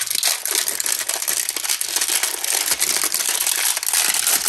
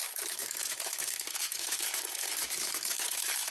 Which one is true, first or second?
first